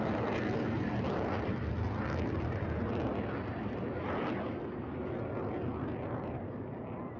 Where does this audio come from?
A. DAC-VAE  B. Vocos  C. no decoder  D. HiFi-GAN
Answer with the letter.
C